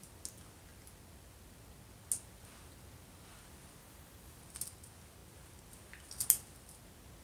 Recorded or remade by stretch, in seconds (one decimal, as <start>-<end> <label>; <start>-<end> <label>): 0.0-3.8 recorded; 3.8-4.4 remade; 4.4-7.2 recorded